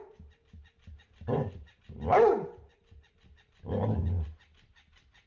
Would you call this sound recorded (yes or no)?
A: yes